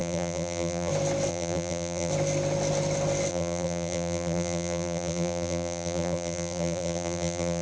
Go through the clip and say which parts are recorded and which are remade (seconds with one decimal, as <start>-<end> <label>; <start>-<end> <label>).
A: 0.0-0.9 remade; 0.9-1.3 recorded; 1.3-2.1 remade; 2.1-3.3 recorded; 3.3-7.6 remade